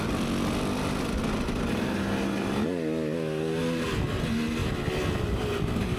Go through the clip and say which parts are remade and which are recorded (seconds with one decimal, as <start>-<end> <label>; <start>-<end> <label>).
0.0-6.0 recorded